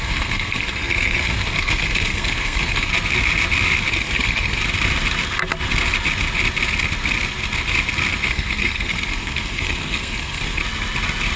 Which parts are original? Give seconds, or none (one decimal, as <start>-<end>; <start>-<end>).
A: 2.9-3.9; 4.6-8.3; 10.6-11.4